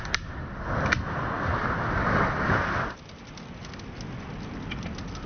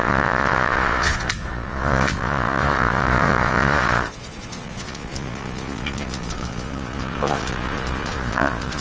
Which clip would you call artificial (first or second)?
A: second